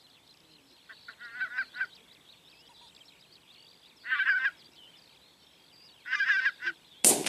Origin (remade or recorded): recorded